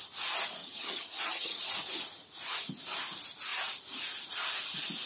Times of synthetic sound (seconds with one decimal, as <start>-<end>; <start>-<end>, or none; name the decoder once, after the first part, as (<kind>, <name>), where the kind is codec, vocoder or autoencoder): 0.6-1.6 (vocoder, HiFi-GAN)